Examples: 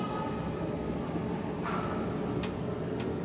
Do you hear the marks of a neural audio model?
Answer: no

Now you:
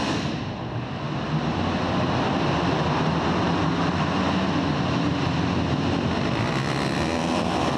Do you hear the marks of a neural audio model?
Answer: no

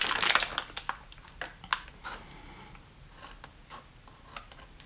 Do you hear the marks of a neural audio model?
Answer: no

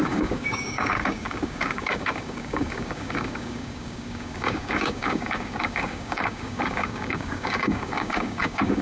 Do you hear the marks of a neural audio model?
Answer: yes